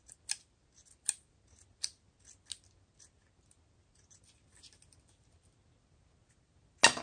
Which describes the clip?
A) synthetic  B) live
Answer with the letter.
B